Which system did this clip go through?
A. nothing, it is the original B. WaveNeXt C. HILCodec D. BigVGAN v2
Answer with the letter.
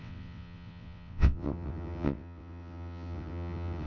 B